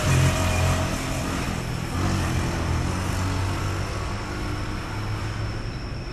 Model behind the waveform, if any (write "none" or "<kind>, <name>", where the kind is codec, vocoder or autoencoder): none